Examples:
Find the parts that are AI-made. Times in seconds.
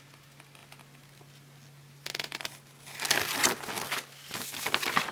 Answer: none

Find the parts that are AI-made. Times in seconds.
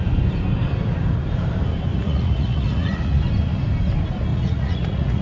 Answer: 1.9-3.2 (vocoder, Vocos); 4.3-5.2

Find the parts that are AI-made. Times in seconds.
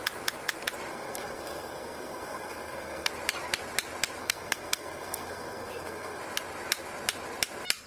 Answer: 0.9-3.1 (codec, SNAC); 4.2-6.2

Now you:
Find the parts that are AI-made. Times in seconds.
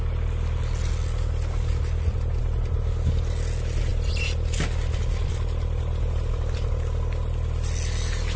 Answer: none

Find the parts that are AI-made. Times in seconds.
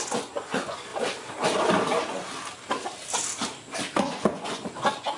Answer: 0.0-0.9 (vocoder, Vocos); 4.0-5.2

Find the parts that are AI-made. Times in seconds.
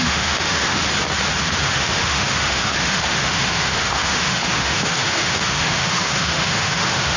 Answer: 0.0-0.8 (autoencoder, DAC-VAE); 1.4-7.2